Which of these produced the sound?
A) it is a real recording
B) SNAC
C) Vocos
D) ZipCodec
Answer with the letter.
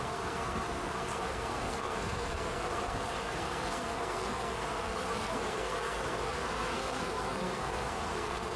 B